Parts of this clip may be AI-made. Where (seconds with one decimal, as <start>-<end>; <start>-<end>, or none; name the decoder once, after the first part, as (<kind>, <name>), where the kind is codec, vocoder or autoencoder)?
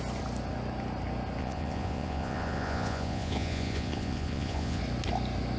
1.4-4.8 (vocoder, Vocos)